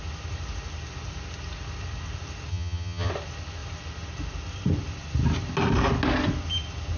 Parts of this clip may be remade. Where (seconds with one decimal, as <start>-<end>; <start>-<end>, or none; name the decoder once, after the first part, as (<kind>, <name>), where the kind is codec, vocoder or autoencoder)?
2.5-3.1 (vocoder, HiFi-GAN)